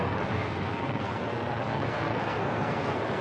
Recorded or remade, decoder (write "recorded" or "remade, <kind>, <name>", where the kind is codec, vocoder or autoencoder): remade, codec, SNAC